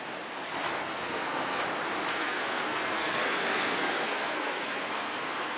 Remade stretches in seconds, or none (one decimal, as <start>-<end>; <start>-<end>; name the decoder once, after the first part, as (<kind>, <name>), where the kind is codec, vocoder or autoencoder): 0.8-1.6 (codec, SNAC); 2.1-5.6